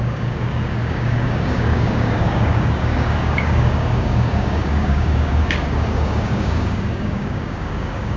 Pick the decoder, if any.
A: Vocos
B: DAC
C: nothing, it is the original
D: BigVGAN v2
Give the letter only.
B